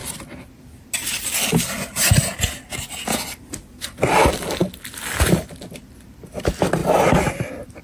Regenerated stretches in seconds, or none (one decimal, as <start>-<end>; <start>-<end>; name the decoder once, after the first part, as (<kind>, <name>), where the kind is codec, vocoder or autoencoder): 6.8-7.8 (vocoder, BigVGAN v2)